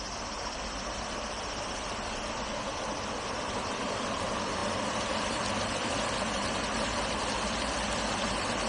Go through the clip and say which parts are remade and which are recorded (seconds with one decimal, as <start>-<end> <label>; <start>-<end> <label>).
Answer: 0.0-8.7 recorded